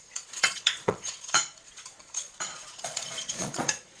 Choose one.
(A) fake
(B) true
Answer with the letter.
A